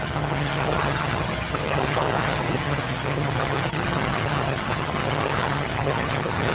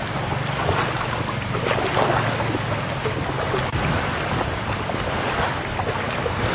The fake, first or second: first